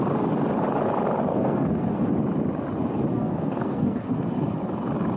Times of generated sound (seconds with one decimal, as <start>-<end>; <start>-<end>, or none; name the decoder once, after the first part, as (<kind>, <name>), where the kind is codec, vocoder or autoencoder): 1.3-2.1 (codec, SNAC); 3.1-4.2